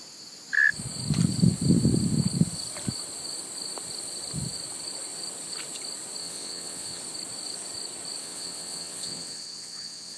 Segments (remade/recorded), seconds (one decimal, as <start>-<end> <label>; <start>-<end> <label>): 0.0-6.2 recorded; 6.2-7.0 remade; 7.0-8.2 recorded; 8.2-10.2 remade